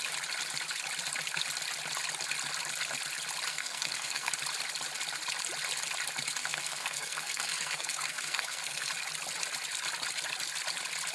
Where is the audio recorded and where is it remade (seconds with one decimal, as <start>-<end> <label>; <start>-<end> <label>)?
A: 0.0-3.5 recorded; 3.5-4.3 remade; 4.3-6.4 recorded; 6.4-8.9 remade; 8.9-11.1 recorded

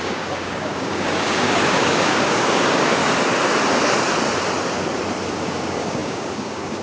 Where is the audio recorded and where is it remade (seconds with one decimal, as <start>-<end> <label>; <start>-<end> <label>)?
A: 0.0-3.0 remade; 3.0-5.3 recorded; 5.3-6.8 remade

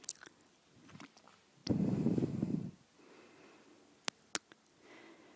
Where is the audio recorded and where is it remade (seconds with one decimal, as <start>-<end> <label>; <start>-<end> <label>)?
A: 0.0-1.6 recorded; 1.6-2.7 remade; 2.7-5.4 recorded